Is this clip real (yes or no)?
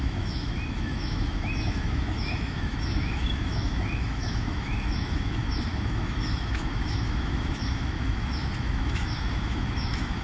no